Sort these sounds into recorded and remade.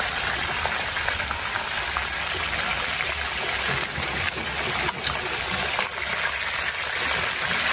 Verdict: recorded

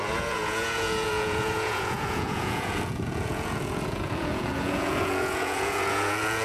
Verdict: remade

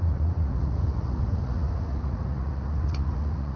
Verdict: remade